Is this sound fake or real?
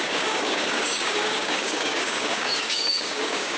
fake